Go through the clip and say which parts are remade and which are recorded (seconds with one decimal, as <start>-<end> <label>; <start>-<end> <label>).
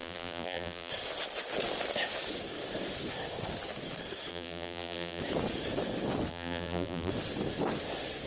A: 0.0-0.9 remade; 0.9-4.3 recorded; 4.3-5.2 remade; 5.2-6.3 recorded; 6.3-7.1 remade; 7.1-8.3 recorded